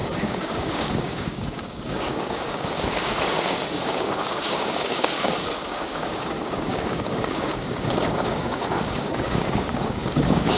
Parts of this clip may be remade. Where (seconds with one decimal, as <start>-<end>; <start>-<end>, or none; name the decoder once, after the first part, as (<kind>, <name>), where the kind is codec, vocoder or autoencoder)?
0.0-10.6 (codec, DAC)